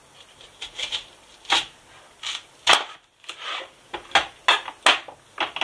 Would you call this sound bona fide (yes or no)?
yes